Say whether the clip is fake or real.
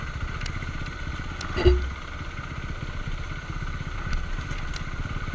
real